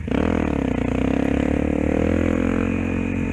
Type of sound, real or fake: real